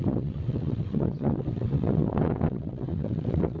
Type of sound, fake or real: fake